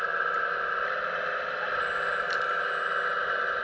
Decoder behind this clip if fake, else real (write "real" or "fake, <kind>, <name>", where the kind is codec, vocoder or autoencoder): real